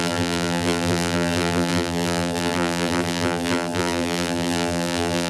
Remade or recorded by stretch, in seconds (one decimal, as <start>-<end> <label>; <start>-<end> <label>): 0.0-5.3 remade